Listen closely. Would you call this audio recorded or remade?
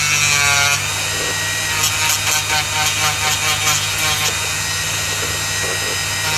recorded